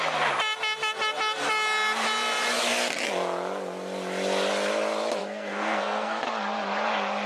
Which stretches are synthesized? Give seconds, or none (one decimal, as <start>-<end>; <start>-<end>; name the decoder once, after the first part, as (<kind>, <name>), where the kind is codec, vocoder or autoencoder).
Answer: 5.2-6.2 (codec, SNAC)